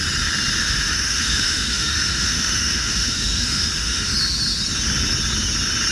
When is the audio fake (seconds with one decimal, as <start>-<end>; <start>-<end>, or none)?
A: 0.6-4.1